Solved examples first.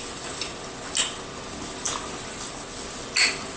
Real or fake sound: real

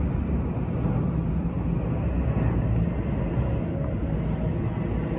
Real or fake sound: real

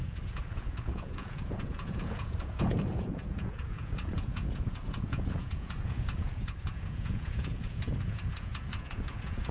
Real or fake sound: fake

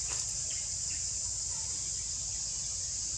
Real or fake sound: real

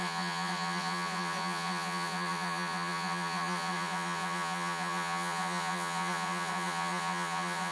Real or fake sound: fake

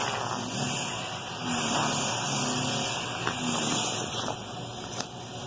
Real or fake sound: real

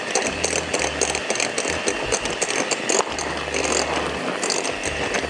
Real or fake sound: real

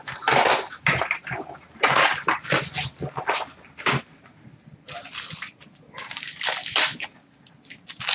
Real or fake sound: real